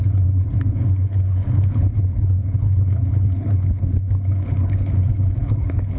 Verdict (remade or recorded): remade